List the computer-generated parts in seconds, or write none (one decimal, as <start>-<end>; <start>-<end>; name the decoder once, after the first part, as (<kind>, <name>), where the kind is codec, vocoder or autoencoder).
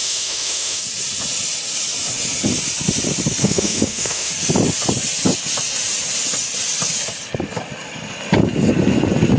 0.0-0.8 (autoencoder, DAC-VAE); 3.4-4.3